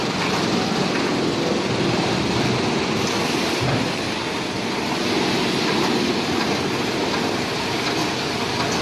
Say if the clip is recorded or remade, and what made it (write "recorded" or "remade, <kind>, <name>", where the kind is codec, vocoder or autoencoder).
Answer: recorded